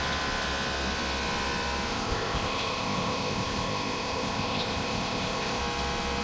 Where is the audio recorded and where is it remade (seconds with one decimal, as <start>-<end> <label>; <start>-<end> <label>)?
0.0-1.9 recorded; 1.9-5.6 remade; 5.6-6.2 recorded